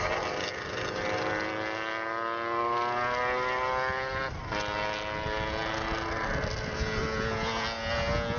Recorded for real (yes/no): yes